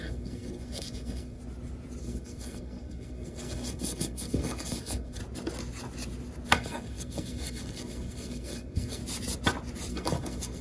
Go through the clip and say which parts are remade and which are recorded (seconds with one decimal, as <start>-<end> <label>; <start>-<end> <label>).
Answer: 0.0-1.4 remade; 1.4-2.0 recorded; 2.0-5.2 remade; 5.2-6.5 recorded; 6.5-9.0 remade; 9.0-9.9 recorded; 9.9-10.6 remade